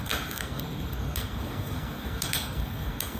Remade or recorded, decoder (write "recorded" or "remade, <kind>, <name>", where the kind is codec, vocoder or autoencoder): remade, codec, SNAC